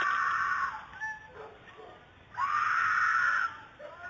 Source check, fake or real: real